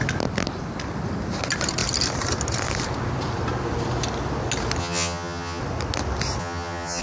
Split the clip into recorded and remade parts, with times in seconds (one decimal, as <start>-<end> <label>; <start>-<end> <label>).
0.0-4.8 recorded; 4.8-5.6 remade; 5.6-6.4 recorded; 6.4-7.0 remade